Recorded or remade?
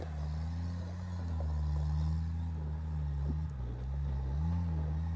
recorded